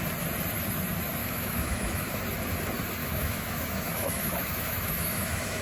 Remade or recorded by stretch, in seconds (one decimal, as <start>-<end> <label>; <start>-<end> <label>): 0.0-1.2 recorded; 1.2-2.2 remade; 2.2-3.0 recorded; 3.0-5.6 remade